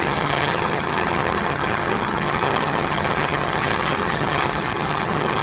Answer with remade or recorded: remade